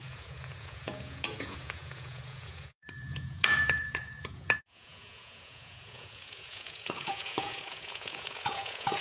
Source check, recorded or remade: remade